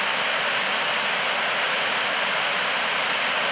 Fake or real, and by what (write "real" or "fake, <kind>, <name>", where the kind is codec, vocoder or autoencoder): real